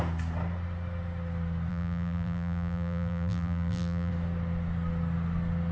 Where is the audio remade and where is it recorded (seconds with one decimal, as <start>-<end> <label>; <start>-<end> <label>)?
0.0-1.7 recorded; 1.7-4.1 remade; 4.1-5.7 recorded